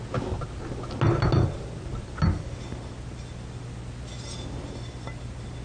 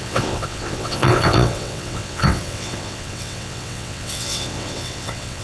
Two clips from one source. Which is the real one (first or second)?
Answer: first